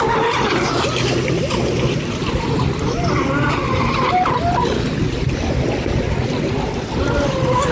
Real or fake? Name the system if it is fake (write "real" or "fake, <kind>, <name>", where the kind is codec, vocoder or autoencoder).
real